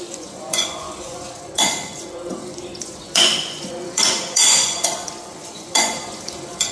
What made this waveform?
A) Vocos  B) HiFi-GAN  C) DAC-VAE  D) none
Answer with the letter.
A